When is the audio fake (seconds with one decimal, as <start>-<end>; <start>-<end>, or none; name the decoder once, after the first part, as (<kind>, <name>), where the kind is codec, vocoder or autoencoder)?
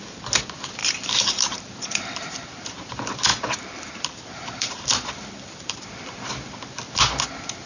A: 0.8-2.8 (vocoder, BigVGAN v2); 3.3-6.0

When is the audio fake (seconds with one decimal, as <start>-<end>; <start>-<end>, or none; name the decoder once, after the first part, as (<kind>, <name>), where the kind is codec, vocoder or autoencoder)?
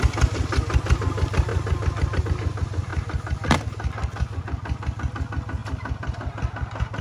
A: 5.6-6.3 (vocoder, BigVGAN v2)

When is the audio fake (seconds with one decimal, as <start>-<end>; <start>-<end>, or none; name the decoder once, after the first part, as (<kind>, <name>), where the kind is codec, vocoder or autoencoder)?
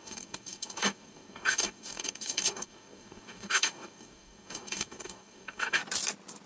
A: 0.0-5.8 (codec, DAC)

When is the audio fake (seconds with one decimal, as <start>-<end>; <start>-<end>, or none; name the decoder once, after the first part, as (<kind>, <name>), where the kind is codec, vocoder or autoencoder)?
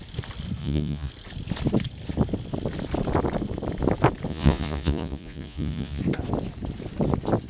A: 0.6-1.1 (vocoder, Vocos); 4.3-6.0